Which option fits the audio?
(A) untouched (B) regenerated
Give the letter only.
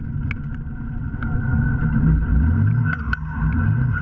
A